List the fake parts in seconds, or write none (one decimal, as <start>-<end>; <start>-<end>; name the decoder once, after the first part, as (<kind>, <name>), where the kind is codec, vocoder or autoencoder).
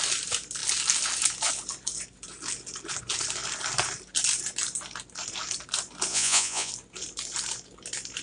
6.1-6.7 (vocoder, Vocos)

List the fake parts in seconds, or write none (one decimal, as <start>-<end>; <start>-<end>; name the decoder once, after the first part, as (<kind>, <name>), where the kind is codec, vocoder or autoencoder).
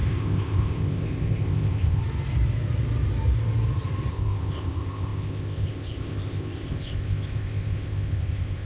0.0-2.0 (codec, ZipCodec); 4.1-8.7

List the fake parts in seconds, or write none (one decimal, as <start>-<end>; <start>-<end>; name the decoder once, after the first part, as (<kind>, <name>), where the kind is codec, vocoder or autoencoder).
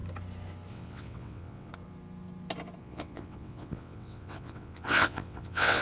0.7-1.7 (vocoder, WaveNeXt); 2.8-5.8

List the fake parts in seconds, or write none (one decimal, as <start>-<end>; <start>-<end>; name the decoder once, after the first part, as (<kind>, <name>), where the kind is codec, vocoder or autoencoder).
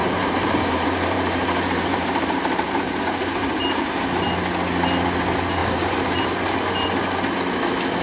0.0-2.8 (vocoder, BigVGAN v2); 5.6-6.2